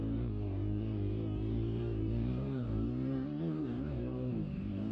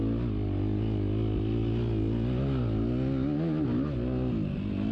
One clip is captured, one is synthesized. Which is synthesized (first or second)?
first